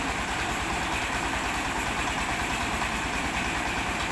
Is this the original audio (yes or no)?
yes